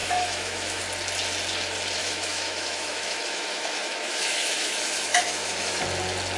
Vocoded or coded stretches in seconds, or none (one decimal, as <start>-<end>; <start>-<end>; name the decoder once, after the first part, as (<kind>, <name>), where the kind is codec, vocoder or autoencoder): 0.0-0.8 (autoencoder, DAC-VAE); 2.0-5.8